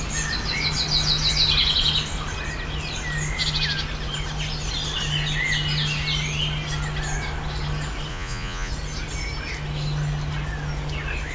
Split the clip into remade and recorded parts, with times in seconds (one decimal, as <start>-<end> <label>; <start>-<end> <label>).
0.0-8.1 recorded; 8.1-8.7 remade; 8.7-11.3 recorded

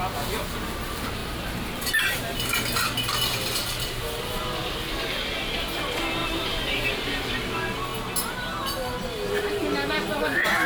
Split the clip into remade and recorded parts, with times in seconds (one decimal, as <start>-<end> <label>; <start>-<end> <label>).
0.0-1.2 recorded; 1.2-1.9 remade; 1.9-6.2 recorded; 6.2-6.9 remade; 6.9-10.7 recorded

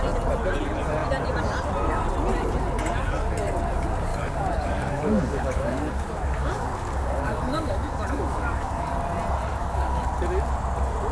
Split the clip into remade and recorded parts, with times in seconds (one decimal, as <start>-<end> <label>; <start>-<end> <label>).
0.0-4.1 recorded; 4.1-8.9 remade; 8.9-9.5 recorded; 9.5-10.1 remade; 10.1-11.1 recorded

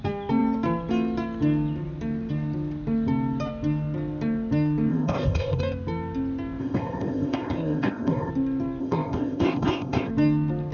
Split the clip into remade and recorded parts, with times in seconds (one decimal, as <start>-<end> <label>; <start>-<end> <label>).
0.0-4.9 recorded; 4.9-5.6 remade; 5.6-6.6 recorded; 6.6-8.3 remade; 8.3-8.8 recorded; 8.8-10.1 remade; 10.1-10.7 recorded

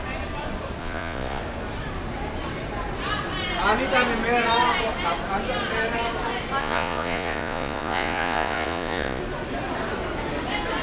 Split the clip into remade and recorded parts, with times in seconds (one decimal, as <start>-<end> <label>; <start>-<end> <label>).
0.0-0.8 recorded; 0.8-1.4 remade; 1.4-6.6 recorded; 6.6-9.2 remade; 9.2-10.8 recorded

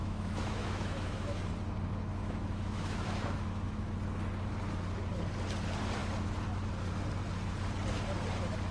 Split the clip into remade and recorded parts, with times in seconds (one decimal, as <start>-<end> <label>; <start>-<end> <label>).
0.0-1.4 remade; 1.4-2.2 recorded; 2.2-3.9 remade; 3.9-8.7 recorded

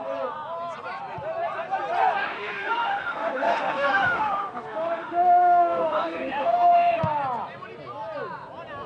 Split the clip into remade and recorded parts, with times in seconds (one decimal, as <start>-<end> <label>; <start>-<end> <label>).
0.0-2.2 recorded; 2.2-7.0 remade; 7.0-8.9 recorded

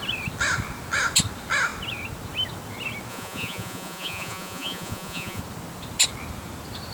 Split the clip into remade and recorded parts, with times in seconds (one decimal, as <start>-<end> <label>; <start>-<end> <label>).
0.0-3.1 recorded; 3.1-5.4 remade; 5.4-6.9 recorded